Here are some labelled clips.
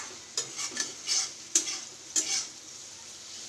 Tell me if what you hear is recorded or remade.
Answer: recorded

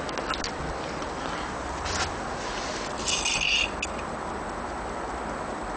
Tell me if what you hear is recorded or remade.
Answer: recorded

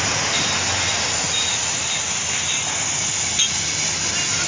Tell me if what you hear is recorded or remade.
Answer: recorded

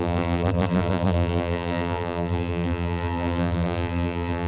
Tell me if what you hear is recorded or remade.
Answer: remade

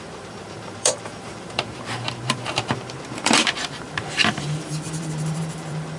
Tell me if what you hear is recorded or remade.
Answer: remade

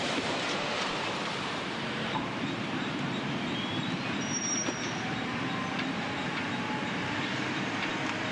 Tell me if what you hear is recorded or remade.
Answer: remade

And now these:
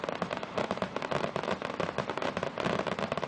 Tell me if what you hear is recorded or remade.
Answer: remade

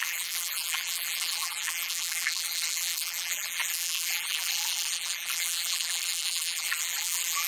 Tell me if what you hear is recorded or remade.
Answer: remade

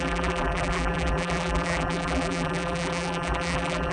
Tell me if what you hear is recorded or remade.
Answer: remade